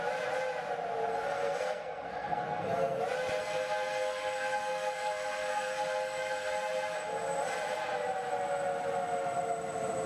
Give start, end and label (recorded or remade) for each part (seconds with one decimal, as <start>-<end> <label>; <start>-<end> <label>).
0.0-1.1 recorded; 1.1-3.0 remade; 3.0-3.4 recorded; 3.4-6.7 remade; 6.7-10.1 recorded